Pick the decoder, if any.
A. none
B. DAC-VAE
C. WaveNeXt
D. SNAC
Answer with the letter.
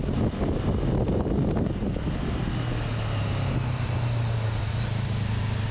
A